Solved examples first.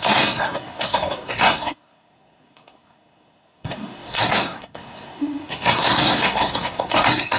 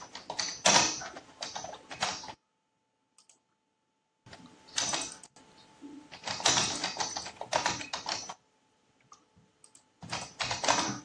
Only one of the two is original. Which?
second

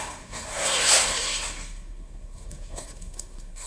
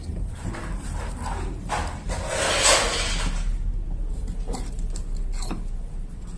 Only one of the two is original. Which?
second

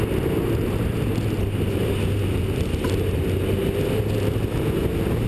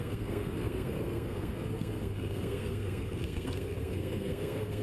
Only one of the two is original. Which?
first